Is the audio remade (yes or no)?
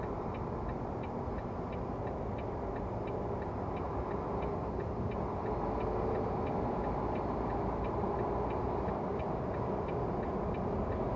no